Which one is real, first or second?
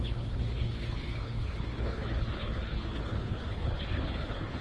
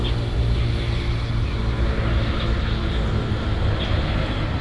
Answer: second